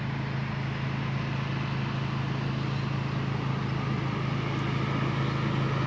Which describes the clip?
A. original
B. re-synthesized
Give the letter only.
A